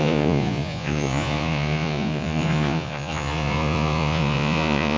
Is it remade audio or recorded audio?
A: remade